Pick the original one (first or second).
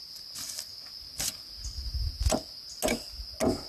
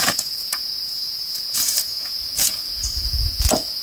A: first